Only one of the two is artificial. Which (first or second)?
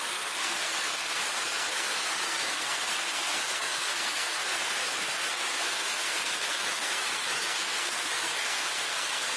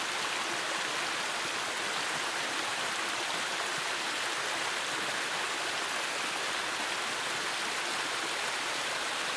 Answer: first